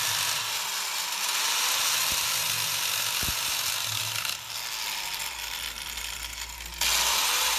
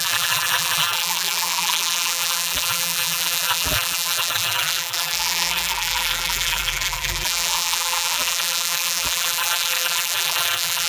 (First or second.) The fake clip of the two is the second